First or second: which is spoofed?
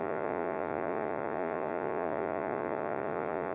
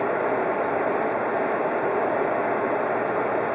first